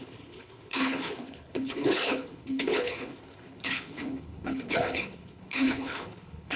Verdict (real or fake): fake